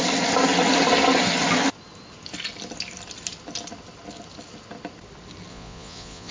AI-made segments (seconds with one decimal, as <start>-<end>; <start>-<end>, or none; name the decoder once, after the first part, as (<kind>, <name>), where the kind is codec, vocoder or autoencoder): 5.5-6.3 (vocoder, Vocos)